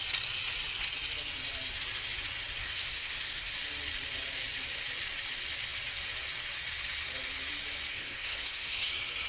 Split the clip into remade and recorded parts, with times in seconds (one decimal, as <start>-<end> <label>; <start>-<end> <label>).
0.0-2.6 recorded; 2.6-3.5 remade; 3.5-7.9 recorded; 7.9-8.9 remade; 8.9-9.3 recorded